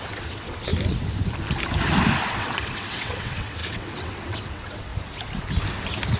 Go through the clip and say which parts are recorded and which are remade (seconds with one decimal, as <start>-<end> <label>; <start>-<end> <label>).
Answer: 0.0-0.7 remade; 0.7-2.3 recorded; 2.3-4.9 remade; 4.9-6.2 recorded